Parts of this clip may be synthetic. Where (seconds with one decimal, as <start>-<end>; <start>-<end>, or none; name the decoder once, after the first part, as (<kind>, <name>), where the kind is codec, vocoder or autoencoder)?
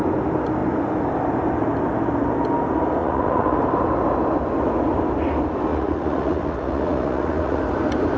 3.0-3.6 (vocoder, Vocos); 5.7-7.6